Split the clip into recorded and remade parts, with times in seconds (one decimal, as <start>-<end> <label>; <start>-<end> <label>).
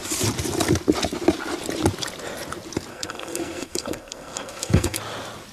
0.0-2.9 recorded; 2.9-5.0 remade; 5.0-5.5 recorded